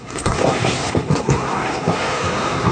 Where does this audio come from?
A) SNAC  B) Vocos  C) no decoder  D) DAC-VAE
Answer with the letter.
A